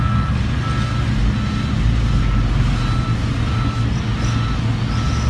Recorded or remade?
recorded